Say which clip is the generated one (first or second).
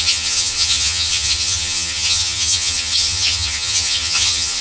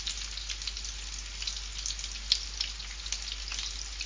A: first